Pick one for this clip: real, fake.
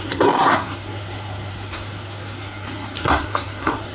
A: fake